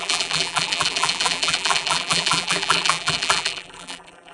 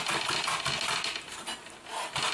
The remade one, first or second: first